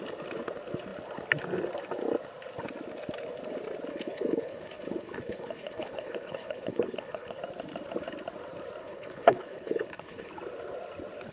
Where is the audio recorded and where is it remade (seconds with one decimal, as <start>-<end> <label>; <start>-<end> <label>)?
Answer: 0.0-3.9 recorded; 3.9-7.4 remade; 7.4-8.8 recorded; 8.8-10.3 remade; 10.3-11.3 recorded